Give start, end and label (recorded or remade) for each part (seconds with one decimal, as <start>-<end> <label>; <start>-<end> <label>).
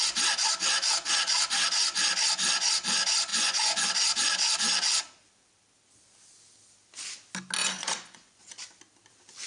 0.0-3.3 recorded; 3.3-3.9 remade; 3.9-7.6 recorded; 7.6-8.5 remade; 8.5-9.5 recorded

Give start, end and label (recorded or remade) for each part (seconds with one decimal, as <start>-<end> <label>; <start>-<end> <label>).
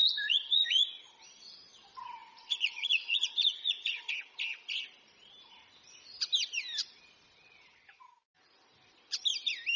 0.0-1.0 remade; 1.0-2.2 recorded; 2.2-4.1 remade; 4.1-9.8 recorded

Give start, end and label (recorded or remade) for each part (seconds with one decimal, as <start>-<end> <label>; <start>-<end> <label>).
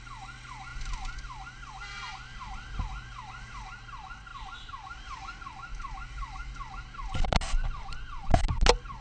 0.0-9.0 recorded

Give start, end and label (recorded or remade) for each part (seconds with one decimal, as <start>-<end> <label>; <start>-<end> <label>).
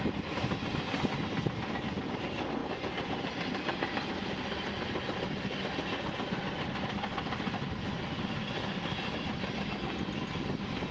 0.0-10.9 recorded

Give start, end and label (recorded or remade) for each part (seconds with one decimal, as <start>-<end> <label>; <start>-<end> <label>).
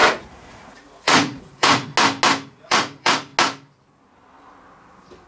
0.0-1.9 remade; 1.9-2.5 recorded; 2.5-3.3 remade; 3.3-5.3 recorded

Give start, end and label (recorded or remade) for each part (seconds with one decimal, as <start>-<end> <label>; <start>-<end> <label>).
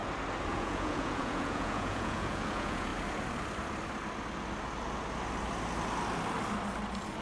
0.0-0.5 recorded; 0.5-2.9 remade; 2.9-7.2 recorded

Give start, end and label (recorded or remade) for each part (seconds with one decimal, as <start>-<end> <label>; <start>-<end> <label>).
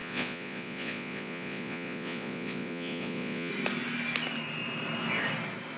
0.0-3.5 remade; 3.5-5.8 recorded